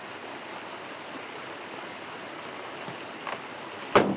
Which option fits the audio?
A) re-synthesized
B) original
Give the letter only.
B